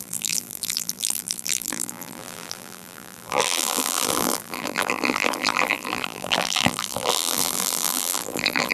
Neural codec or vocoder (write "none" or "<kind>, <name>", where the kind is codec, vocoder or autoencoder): vocoder, BigVGAN v2